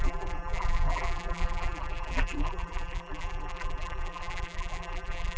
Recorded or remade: remade